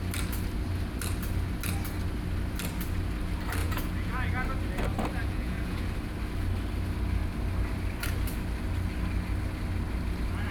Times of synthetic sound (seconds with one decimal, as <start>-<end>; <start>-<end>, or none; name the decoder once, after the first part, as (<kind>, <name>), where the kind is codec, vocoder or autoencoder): 3.6-4.3 (vocoder, Vocos); 5.2-5.8